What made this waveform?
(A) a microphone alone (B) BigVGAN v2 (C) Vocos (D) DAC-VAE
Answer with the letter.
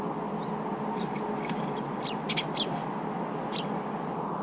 A